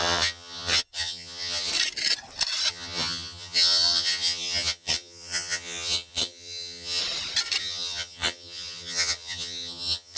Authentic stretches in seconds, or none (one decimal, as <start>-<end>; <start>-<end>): 1.7-2.7; 7.0-7.6